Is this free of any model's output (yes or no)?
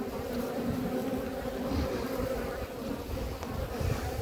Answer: yes